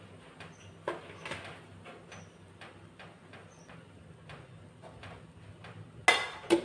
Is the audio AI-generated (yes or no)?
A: no